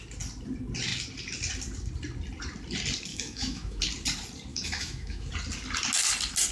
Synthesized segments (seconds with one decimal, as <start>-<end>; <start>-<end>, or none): 3.1-3.8; 4.5-5.3